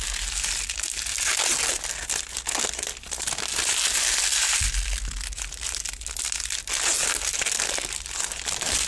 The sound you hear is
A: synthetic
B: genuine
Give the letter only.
B